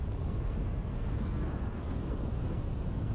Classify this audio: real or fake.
fake